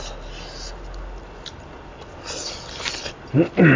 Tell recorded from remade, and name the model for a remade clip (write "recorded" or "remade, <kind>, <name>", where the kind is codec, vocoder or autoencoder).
recorded